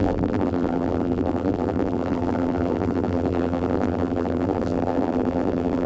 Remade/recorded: remade